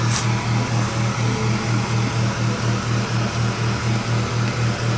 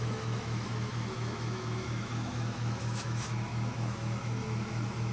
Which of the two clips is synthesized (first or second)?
second